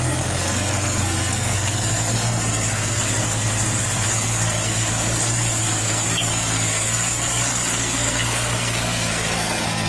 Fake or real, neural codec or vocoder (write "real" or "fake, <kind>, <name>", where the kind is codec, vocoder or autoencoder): fake, codec, SNAC